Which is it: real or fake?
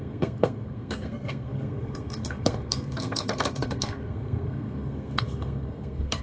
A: fake